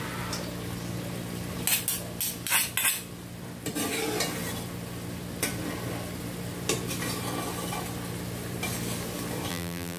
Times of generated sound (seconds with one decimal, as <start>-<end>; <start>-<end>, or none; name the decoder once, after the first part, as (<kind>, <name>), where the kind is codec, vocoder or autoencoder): 9.5-10.0 (vocoder, BigVGAN v2)